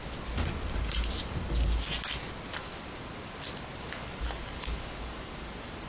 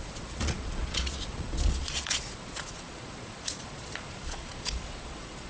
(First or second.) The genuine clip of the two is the first